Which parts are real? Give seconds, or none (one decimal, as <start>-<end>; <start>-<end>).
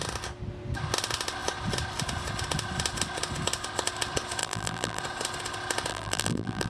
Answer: 0.0-4.4; 5.0-5.9